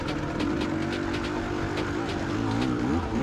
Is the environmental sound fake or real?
real